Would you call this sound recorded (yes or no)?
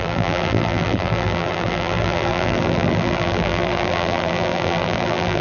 no